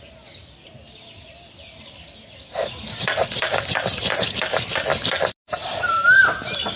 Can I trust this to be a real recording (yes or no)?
yes